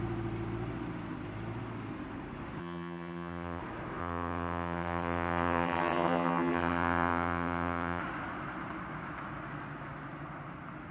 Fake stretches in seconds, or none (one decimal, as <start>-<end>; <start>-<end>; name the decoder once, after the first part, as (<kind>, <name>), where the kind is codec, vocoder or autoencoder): 2.6-3.6 (vocoder, HiFi-GAN); 4.0-8.0